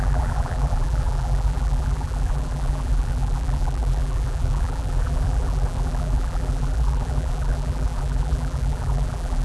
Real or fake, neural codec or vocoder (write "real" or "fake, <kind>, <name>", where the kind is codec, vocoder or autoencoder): fake, vocoder, BigVGAN v2